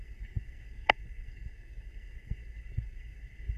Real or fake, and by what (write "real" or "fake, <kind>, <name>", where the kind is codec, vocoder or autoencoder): fake, codec, SNAC